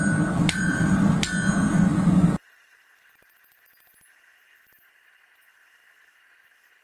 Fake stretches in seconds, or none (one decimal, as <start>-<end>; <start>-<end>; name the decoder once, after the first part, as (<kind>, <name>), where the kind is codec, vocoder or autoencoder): none